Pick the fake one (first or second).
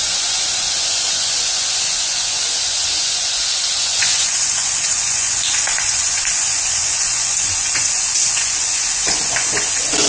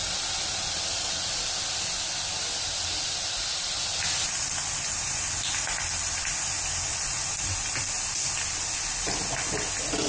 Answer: first